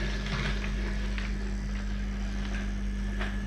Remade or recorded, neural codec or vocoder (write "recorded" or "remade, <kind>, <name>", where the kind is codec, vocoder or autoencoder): recorded